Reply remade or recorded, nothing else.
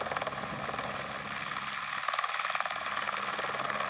recorded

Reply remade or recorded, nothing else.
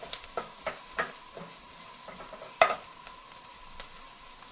recorded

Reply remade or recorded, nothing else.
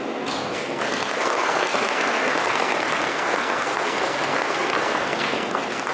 remade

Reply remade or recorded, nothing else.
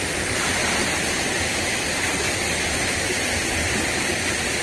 recorded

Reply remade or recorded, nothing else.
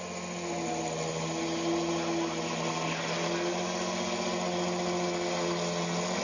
recorded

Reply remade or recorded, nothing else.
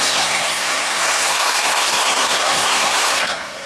remade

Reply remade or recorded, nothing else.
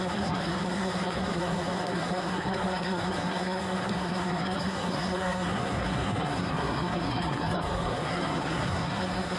remade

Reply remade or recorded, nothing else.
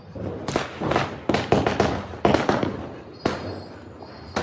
recorded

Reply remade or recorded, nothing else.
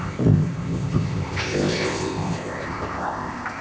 remade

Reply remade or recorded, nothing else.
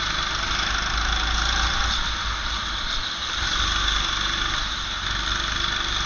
recorded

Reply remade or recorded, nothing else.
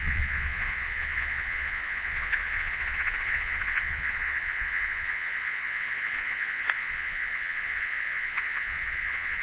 remade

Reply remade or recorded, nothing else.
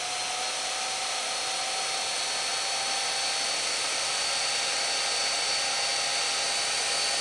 recorded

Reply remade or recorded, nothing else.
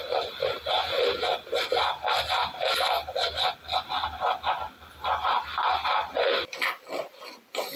recorded